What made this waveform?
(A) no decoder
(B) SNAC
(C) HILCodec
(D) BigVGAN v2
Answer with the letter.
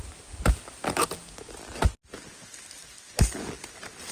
A